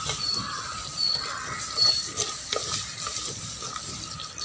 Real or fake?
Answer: real